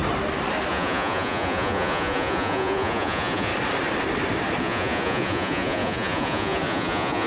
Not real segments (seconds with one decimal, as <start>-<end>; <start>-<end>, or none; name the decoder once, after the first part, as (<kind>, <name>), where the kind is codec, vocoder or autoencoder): 0.7-3.5 (vocoder, Vocos); 4.6-7.3